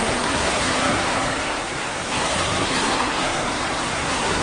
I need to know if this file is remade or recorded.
remade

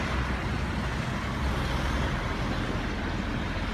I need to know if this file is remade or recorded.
recorded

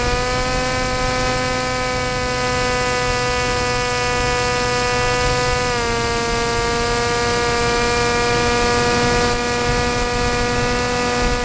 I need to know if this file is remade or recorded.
recorded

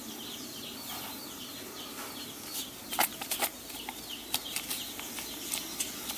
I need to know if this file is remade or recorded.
recorded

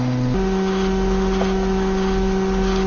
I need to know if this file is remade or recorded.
recorded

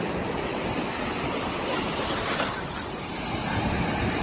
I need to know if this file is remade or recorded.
recorded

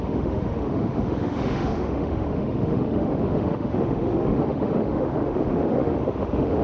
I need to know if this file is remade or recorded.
remade